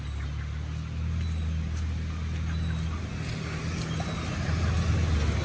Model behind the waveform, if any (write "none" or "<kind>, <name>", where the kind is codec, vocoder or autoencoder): none